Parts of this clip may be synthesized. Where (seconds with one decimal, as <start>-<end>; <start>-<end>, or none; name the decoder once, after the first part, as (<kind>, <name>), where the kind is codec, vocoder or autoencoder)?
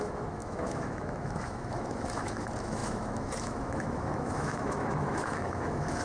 0.0-6.0 (autoencoder, DAC-VAE)